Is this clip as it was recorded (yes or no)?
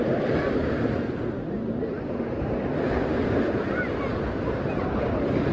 yes